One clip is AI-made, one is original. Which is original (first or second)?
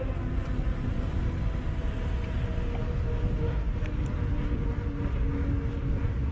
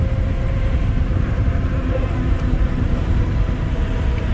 first